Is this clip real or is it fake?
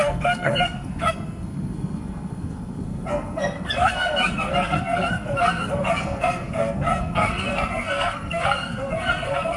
fake